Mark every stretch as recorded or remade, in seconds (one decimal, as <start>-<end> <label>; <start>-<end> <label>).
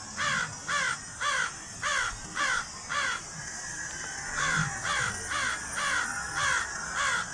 0.0-2.9 recorded; 2.9-3.6 remade; 3.6-7.3 recorded